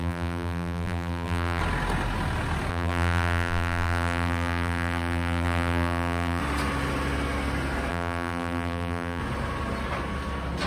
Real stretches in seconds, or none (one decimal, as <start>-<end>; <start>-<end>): 1.6-2.7; 6.4-7.9; 9.2-10.7